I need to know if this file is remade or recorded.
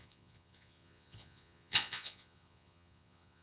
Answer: remade